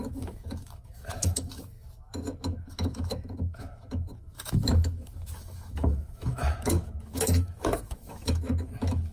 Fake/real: fake